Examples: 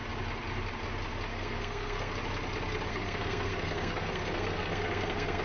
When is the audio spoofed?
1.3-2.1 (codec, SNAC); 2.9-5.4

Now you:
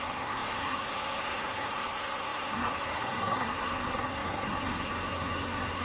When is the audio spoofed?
0.0-5.8 (codec, SNAC)